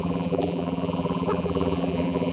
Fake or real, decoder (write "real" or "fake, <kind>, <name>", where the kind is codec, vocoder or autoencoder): fake, vocoder, BigVGAN v2